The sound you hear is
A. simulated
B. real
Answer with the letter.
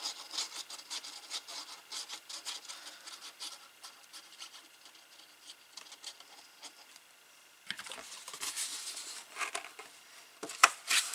B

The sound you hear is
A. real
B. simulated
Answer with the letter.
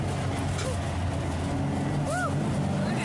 A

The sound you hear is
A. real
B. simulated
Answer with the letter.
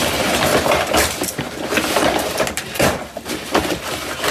B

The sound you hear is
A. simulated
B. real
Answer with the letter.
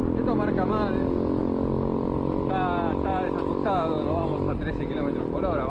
B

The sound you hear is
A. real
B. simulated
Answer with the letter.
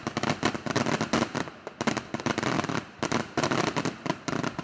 A